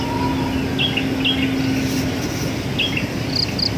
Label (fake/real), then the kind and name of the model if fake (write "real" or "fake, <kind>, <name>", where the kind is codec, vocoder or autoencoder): real